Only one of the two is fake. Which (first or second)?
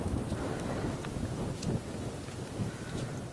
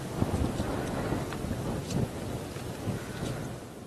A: first